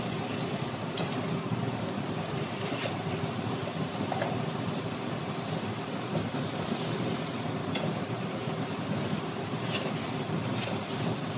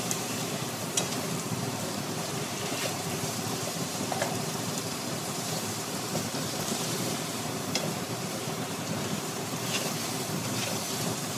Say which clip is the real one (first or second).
first